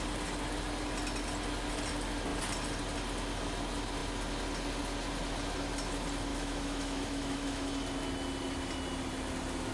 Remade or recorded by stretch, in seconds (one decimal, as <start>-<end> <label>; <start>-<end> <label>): 0.0-6.3 recorded; 6.3-7.7 remade; 7.7-9.7 recorded

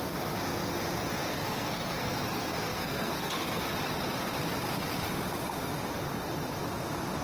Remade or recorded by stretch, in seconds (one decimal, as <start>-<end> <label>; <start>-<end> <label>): 0.0-1.2 recorded; 1.2-3.6 remade; 3.6-7.2 recorded

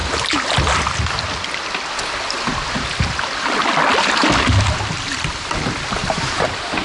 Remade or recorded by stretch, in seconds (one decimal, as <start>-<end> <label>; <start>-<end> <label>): 0.0-6.8 recorded